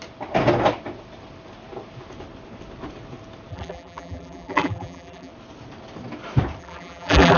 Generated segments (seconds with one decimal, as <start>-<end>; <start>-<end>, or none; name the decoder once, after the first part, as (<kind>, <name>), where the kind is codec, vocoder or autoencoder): 3.5-5.3 (vocoder, BigVGAN v2); 6.6-7.4